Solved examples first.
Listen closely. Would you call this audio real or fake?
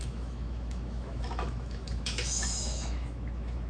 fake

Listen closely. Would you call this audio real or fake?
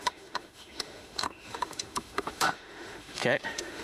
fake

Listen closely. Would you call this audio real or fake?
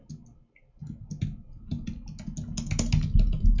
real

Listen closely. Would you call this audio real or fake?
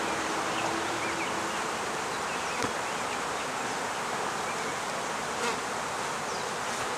real